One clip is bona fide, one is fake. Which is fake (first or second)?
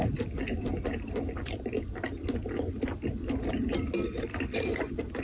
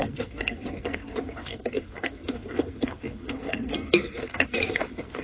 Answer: second